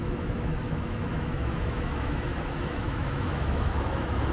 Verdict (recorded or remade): remade